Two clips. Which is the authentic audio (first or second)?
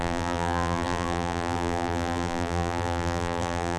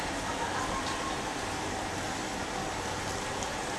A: second